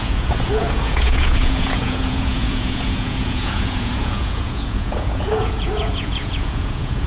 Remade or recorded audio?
remade